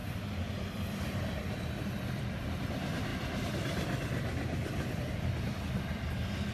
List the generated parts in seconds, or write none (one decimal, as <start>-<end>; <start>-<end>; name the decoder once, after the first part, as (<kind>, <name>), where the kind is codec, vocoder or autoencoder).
none